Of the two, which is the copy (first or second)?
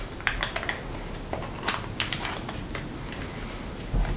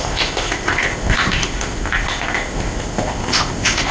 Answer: second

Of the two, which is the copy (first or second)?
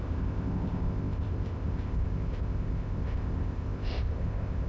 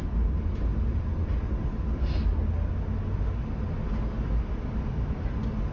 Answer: first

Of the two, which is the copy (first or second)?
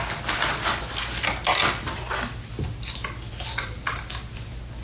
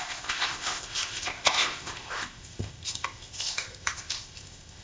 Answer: second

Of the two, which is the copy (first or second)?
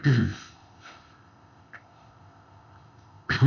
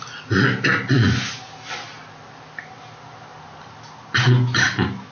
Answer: first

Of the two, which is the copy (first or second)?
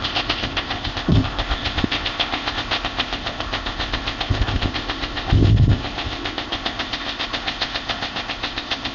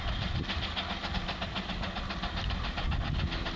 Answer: first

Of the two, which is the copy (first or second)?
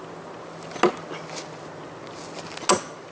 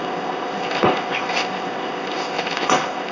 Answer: second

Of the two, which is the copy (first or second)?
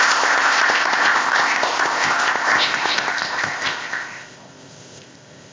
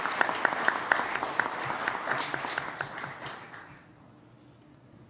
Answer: first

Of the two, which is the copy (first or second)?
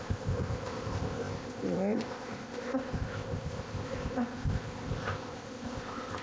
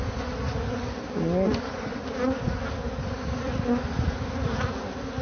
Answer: first